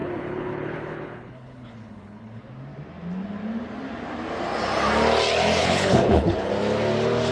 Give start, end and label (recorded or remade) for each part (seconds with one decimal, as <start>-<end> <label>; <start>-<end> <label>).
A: 0.0-2.4 remade; 2.4-5.6 recorded; 5.6-6.5 remade; 6.5-7.3 recorded